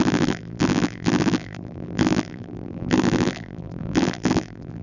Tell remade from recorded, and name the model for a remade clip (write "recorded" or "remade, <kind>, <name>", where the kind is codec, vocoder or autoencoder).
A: remade, vocoder, BigVGAN v2